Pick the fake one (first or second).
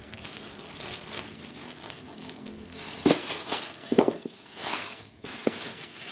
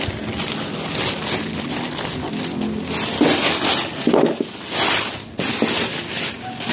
first